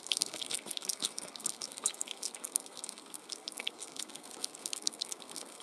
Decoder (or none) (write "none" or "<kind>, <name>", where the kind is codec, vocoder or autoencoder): codec, SNAC